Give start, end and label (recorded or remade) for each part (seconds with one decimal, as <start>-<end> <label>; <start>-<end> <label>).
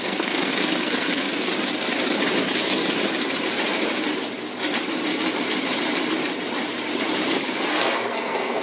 0.0-1.5 remade; 1.5-2.4 recorded; 2.4-2.8 remade; 2.8-7.7 recorded; 7.7-8.6 remade